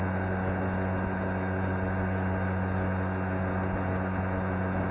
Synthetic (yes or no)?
no